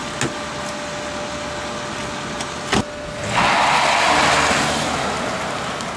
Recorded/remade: recorded